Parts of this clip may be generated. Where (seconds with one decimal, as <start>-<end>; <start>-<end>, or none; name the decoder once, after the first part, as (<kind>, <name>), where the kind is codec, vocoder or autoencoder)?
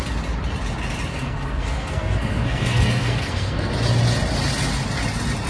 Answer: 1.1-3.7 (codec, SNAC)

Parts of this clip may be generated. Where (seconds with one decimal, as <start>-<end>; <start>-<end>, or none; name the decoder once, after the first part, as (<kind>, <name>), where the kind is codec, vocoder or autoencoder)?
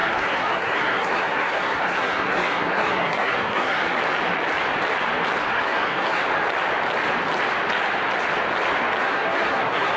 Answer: 0.0-4.0 (codec, SNAC); 5.4-6.2; 9.0-10.0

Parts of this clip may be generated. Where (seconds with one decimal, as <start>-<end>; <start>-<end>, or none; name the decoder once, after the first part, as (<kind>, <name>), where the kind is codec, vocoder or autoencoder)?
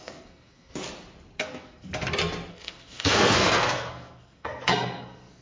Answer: 0.0-0.7 (codec, SNAC); 1.4-1.9; 2.5-5.4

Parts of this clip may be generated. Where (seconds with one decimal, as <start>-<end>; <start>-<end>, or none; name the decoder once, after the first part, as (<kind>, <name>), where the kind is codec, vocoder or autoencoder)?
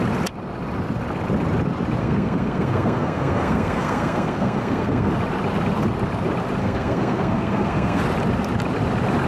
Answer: 2.0-5.1 (codec, SNAC); 6.6-8.0